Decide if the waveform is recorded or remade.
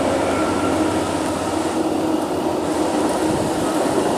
recorded